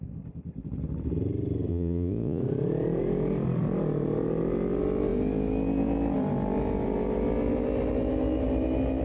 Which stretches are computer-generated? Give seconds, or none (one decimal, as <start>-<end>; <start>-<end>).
1.7-2.4